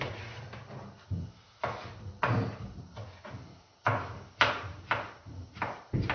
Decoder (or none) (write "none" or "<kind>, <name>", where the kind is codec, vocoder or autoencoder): none